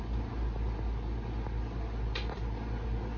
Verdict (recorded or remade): recorded